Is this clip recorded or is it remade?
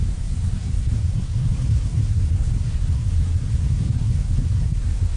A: remade